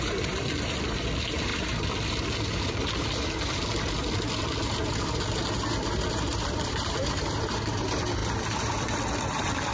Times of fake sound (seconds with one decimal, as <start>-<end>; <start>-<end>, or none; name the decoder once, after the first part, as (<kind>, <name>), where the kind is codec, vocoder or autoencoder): 6.3-7.4 (vocoder, BigVGAN v2); 8.2-9.0